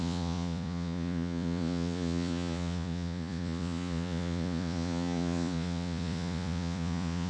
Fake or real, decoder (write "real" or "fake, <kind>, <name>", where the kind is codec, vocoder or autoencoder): fake, vocoder, Vocos